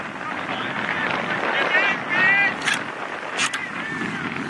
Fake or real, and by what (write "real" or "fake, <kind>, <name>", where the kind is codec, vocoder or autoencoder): real